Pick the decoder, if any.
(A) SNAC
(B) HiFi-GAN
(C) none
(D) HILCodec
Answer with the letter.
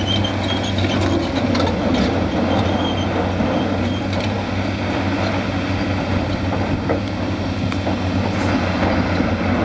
C